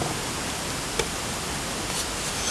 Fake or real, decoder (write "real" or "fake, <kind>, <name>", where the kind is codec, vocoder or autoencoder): real